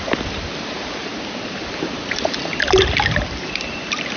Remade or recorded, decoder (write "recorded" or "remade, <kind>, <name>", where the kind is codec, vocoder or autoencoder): remade, vocoder, BigVGAN v2